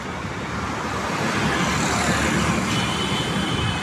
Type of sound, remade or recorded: recorded